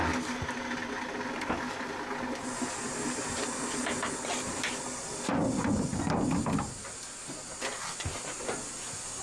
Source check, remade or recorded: recorded